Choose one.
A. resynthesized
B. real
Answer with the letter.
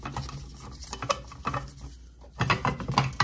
B